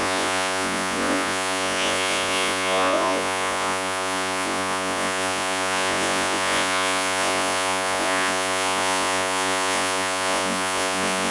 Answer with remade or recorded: remade